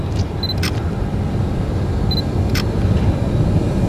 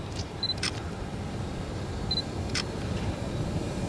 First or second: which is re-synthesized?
second